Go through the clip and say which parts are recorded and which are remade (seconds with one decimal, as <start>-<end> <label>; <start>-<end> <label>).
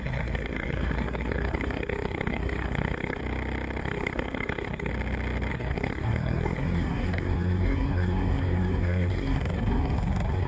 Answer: 0.0-3.2 remade; 3.2-3.8 recorded; 3.8-4.9 remade; 4.9-5.5 recorded; 5.5-10.5 remade